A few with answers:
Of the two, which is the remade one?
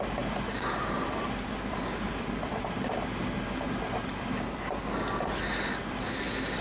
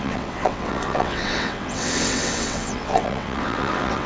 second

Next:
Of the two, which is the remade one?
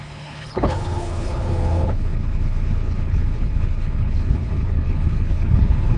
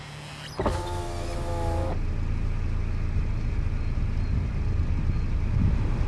first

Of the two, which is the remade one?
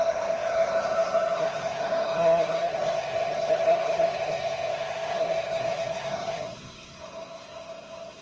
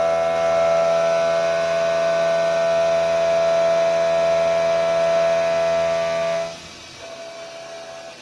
first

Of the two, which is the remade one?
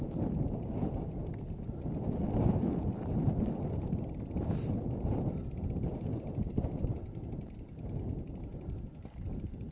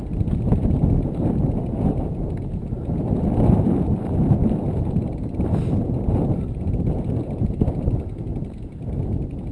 first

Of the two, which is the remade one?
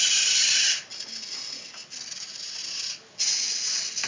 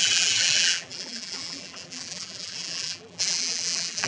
second